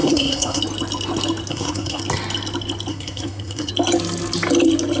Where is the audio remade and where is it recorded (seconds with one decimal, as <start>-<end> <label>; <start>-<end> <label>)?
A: 0.0-0.6 remade; 0.6-1.5 recorded; 1.5-2.0 remade; 2.0-2.9 recorded; 2.9-3.7 remade; 3.7-5.0 recorded